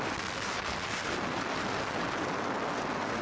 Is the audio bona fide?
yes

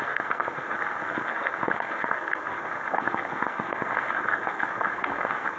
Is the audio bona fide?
no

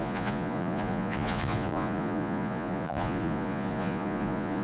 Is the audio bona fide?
no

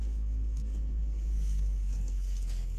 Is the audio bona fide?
no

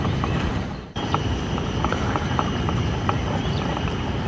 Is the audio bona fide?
no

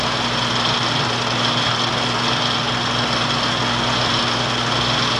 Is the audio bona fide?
yes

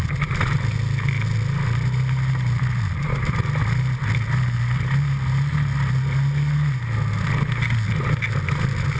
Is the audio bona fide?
yes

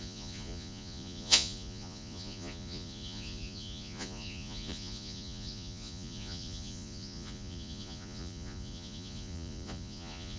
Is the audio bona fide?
no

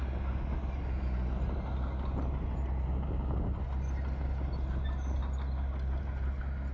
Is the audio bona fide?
yes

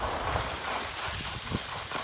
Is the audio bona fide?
yes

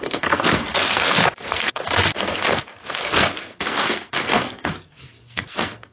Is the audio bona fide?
no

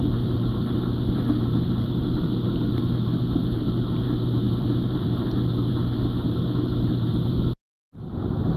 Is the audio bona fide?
no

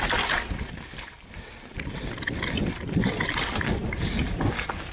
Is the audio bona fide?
yes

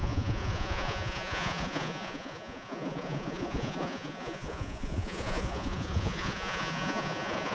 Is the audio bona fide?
no